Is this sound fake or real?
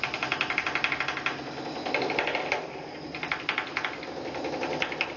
real